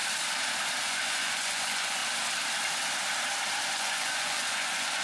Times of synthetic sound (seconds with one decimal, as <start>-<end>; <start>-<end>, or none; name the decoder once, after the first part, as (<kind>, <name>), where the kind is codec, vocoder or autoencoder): 0.8-2.0 (vocoder, Vocos); 3.7-5.0